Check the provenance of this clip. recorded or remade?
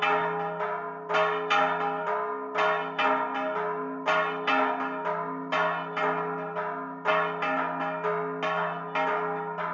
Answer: recorded